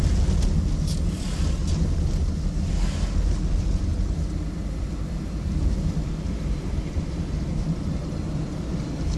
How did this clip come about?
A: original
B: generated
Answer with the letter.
A